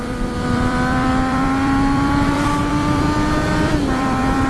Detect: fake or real fake